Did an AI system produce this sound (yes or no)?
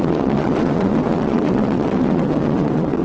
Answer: yes